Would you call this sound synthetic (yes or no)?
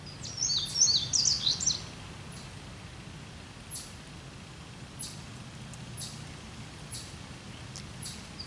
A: no